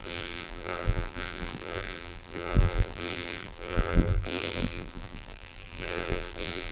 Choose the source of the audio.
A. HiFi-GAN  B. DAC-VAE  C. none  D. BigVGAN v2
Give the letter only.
D